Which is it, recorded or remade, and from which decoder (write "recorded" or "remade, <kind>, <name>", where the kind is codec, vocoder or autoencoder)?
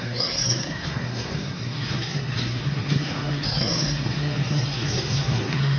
remade, codec, SNAC